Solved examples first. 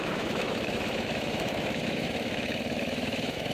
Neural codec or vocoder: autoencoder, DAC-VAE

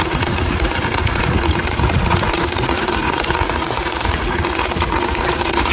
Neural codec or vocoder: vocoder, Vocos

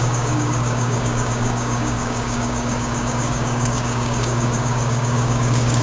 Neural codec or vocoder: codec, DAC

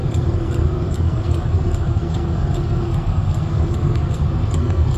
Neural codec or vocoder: codec, SNAC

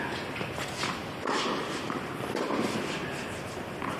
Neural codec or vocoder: none